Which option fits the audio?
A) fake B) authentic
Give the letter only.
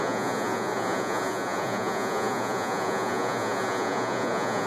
A